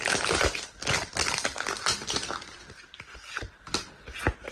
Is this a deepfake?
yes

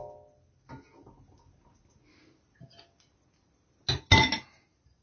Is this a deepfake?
no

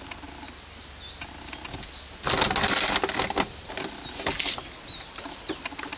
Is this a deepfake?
no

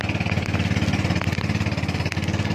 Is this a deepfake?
no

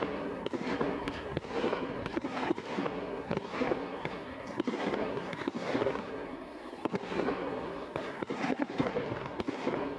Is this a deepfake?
yes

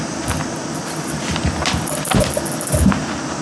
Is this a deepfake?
no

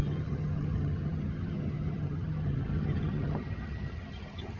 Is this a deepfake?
yes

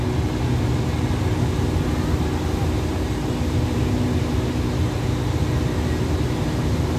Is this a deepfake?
no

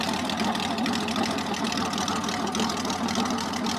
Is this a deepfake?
no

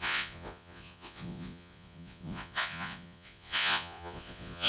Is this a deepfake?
yes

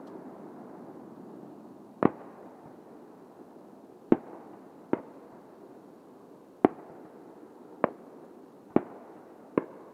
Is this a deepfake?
no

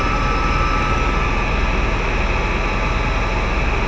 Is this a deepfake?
no